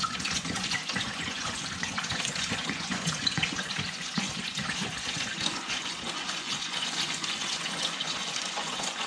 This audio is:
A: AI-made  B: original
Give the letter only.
A